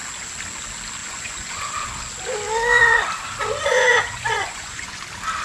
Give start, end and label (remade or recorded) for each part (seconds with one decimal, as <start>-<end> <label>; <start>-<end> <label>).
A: 0.0-1.0 recorded; 1.0-1.7 remade; 1.7-3.7 recorded; 3.7-5.0 remade; 5.0-5.4 recorded